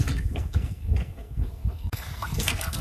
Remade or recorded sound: remade